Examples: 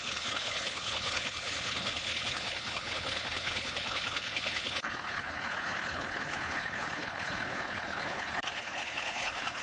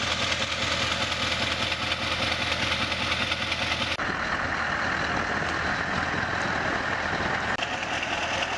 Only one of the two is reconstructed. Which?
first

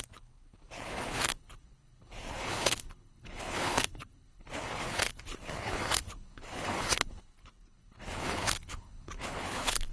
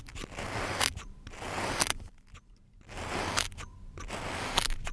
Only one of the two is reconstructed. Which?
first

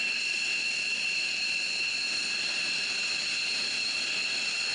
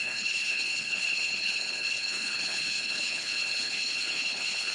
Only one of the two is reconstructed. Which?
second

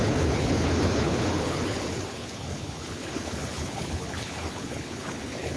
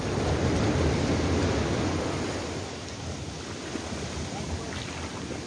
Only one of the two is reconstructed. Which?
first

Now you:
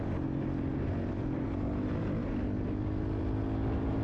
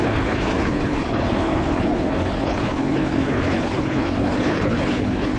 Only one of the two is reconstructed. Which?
second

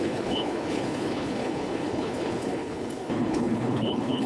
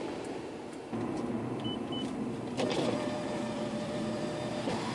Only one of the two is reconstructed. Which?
first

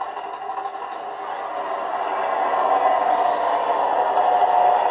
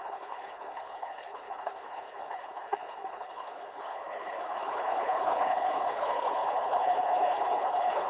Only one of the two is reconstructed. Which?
second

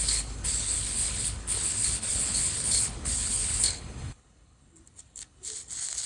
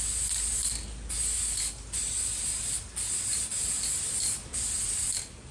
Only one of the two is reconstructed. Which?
first